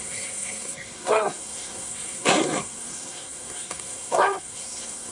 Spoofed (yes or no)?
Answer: yes